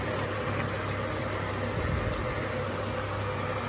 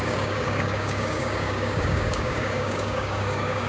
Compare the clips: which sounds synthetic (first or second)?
second